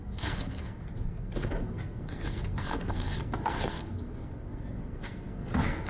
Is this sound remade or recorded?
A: remade